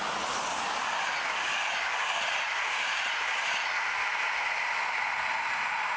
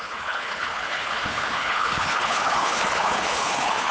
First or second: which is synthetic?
second